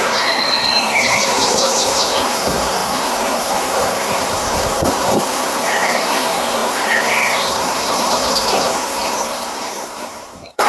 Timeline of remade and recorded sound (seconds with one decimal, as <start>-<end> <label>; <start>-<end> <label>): 0.0-10.7 remade